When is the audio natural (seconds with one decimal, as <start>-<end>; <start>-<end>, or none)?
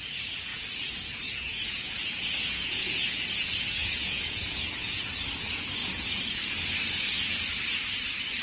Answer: 0.0-0.5; 5.0-8.4